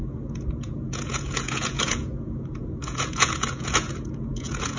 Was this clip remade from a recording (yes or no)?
yes